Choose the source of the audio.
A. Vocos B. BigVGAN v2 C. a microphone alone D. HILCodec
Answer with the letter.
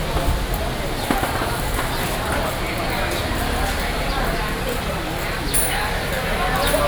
C